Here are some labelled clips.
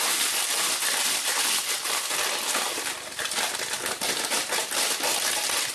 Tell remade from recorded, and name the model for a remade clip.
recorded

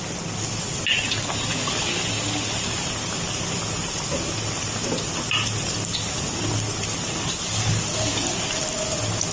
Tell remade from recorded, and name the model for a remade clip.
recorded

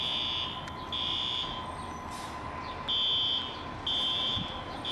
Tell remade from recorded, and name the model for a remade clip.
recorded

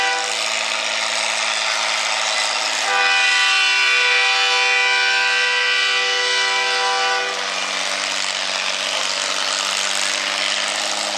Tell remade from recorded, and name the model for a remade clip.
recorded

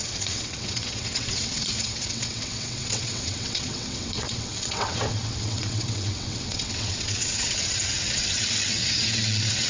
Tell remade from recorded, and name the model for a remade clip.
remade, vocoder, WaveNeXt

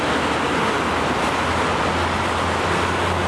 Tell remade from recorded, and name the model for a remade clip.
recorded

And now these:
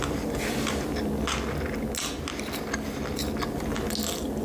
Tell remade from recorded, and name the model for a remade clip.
recorded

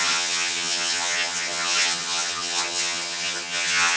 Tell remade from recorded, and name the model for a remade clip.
remade, vocoder, HiFi-GAN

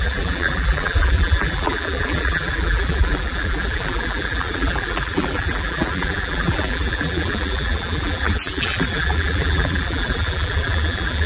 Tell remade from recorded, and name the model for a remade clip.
remade, vocoder, BigVGAN v2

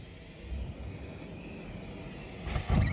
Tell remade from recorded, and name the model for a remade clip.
recorded